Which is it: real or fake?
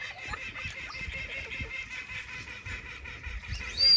real